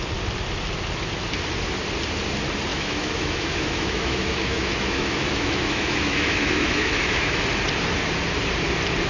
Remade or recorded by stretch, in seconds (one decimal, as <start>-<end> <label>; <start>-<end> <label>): 0.0-2.7 recorded; 2.7-7.4 remade; 7.4-9.1 recorded